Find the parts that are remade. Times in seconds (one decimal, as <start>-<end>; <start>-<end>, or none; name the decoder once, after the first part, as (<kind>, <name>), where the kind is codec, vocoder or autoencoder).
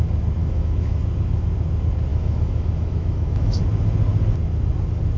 0.4-1.0 (autoencoder, DAC-VAE); 2.1-3.6